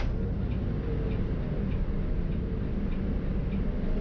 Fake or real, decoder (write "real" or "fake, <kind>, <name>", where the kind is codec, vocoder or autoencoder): real